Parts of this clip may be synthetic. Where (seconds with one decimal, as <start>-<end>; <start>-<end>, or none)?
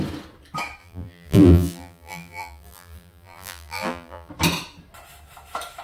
0.8-4.3